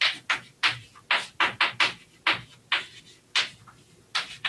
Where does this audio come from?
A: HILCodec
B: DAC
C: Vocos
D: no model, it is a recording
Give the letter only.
D